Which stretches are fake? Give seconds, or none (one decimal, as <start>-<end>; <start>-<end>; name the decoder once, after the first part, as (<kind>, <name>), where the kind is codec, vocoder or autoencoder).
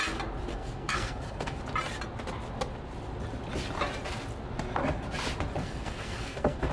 0.5-1.6 (codec, SNAC); 5.6-6.7